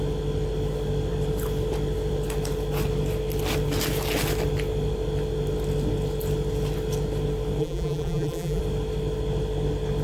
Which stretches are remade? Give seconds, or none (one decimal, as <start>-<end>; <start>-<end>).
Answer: 7.6-8.6